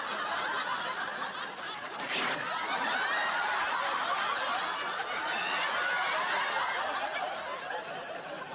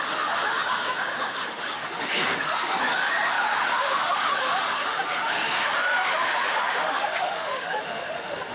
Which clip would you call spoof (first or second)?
second